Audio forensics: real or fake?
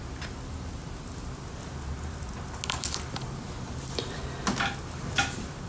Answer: real